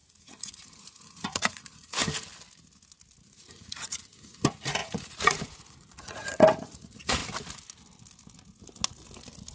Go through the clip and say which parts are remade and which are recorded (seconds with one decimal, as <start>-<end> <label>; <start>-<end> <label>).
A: 0.0-2.0 remade; 2.0-3.3 recorded; 3.3-7.2 remade; 7.2-9.5 recorded